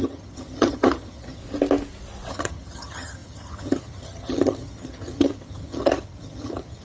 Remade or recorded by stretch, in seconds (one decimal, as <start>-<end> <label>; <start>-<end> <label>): 0.0-1.4 remade; 1.4-2.3 recorded; 2.3-6.8 remade